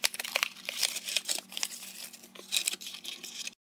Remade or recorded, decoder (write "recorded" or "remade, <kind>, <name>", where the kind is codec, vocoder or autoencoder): recorded